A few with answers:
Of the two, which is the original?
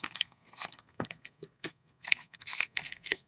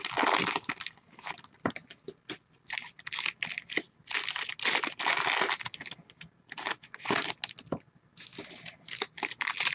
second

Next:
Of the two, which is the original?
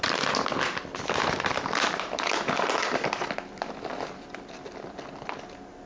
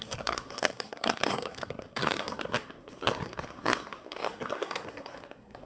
first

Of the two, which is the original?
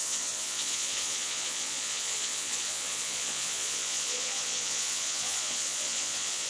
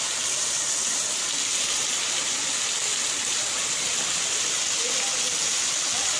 second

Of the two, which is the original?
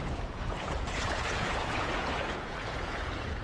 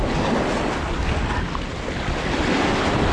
second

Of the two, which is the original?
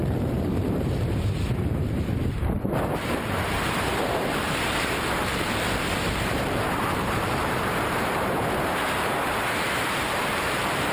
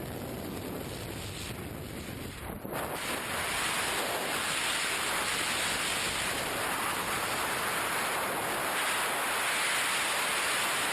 second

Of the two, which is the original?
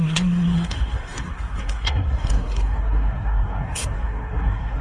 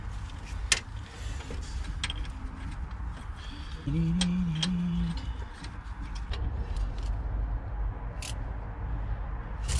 second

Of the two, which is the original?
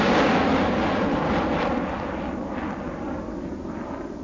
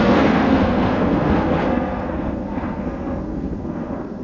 first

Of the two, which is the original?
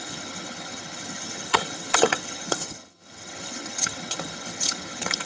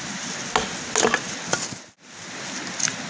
second